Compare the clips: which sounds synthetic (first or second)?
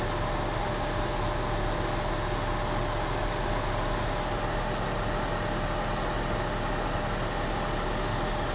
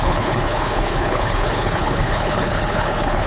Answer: second